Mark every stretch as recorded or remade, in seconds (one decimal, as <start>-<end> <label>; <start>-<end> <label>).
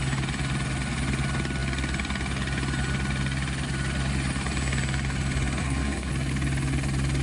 0.0-5.6 recorded; 5.6-6.1 remade; 6.1-7.2 recorded